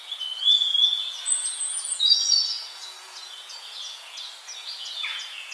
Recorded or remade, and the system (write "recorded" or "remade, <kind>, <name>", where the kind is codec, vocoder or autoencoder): remade, vocoder, Vocos